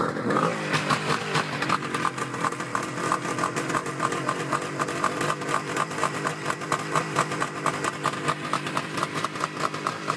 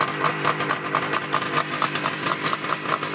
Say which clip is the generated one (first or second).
first